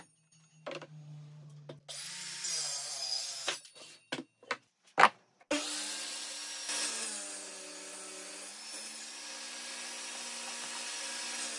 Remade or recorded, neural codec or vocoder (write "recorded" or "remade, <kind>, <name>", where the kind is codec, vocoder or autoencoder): recorded